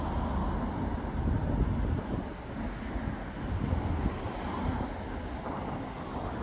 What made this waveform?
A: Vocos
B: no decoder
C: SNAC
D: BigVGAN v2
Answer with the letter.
B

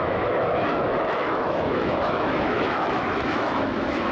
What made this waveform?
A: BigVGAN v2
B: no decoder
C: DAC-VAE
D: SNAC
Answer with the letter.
C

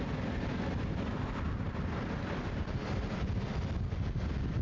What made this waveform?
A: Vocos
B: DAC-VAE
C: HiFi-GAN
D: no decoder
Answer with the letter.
D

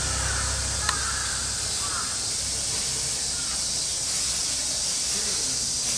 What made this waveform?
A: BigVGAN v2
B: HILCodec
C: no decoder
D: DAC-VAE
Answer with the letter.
C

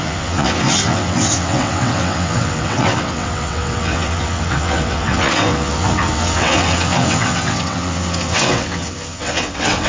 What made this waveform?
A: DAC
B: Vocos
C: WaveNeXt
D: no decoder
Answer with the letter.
C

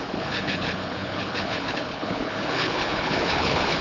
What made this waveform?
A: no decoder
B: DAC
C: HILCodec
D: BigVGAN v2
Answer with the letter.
C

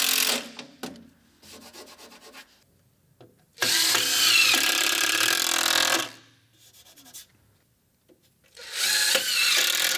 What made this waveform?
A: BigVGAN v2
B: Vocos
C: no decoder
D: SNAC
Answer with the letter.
C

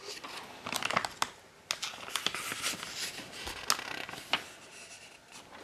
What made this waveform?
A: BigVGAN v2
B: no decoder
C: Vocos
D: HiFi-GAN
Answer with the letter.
B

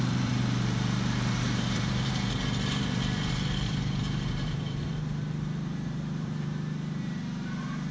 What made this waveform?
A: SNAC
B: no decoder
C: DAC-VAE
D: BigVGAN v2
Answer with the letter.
D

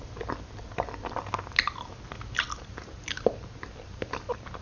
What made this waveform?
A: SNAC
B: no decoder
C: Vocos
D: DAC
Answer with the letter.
B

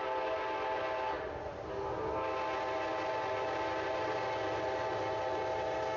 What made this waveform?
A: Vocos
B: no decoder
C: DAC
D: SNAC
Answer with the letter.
B